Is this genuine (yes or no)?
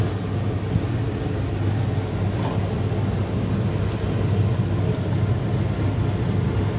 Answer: yes